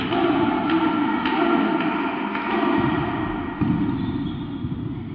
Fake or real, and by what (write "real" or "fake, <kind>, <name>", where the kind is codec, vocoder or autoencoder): real